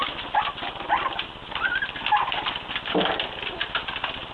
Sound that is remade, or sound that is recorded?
recorded